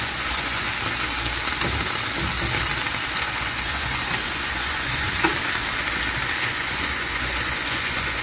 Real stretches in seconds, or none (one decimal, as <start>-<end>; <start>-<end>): 0.7-3.1; 5.3-6.4